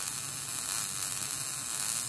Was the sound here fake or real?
real